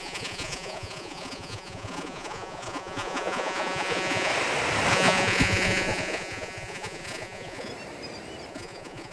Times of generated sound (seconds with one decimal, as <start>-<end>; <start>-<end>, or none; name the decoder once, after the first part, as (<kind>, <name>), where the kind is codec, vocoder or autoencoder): 0.0-4.3 (vocoder, Vocos); 4.9-7.7; 8.5-9.1